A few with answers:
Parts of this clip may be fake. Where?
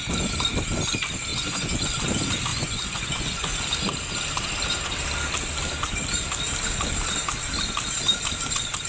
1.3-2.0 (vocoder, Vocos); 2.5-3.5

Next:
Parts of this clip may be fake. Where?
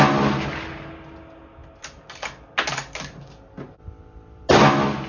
none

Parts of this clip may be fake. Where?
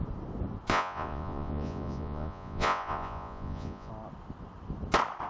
0.7-3.9 (vocoder, Vocos)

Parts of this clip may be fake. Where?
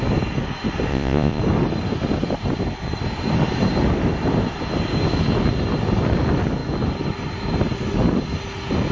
0.9-1.4 (vocoder, Vocos)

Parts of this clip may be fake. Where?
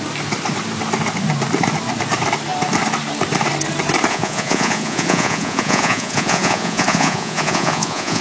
4.1-8.2 (vocoder, Vocos)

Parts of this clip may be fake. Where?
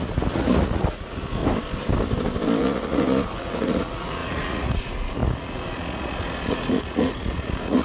0.0-1.4 (vocoder, Vocos); 2.6-7.8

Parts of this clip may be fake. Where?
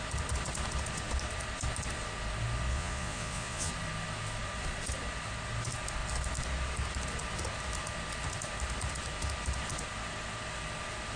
2.7-3.7 (vocoder, Vocos)